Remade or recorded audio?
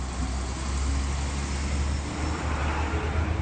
recorded